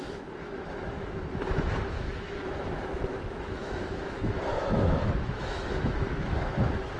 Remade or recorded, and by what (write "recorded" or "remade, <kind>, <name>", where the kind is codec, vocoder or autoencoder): remade, autoencoder, DAC-VAE